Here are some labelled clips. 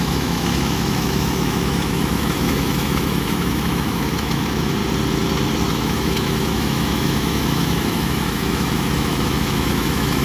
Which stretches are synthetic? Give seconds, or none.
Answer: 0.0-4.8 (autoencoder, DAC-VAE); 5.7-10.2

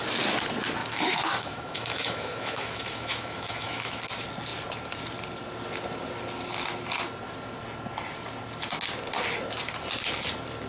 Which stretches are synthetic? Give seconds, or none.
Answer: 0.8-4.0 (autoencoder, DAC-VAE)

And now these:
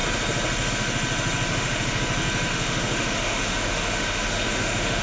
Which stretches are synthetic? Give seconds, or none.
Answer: 1.5-2.0 (autoencoder, DAC-VAE); 2.5-5.0

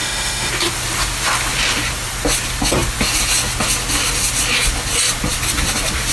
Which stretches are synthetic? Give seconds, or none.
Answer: 0.0-0.5 (autoencoder, DAC-VAE)

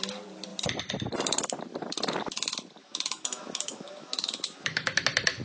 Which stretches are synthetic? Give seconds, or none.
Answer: 2.8-5.0 (autoencoder, DAC-VAE)

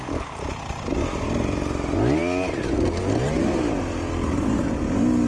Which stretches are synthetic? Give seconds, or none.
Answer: none

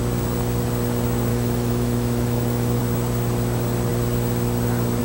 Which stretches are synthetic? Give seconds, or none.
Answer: 1.3-2.8 (autoencoder, DAC-VAE)